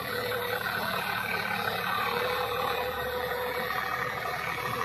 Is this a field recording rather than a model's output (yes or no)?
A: no